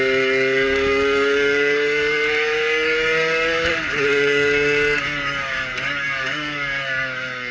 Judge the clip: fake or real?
fake